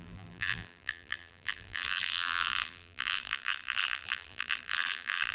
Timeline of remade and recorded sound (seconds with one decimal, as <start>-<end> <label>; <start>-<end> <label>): 0.0-5.3 remade